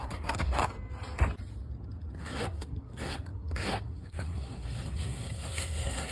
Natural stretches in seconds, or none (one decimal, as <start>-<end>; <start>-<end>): 0.6-2.2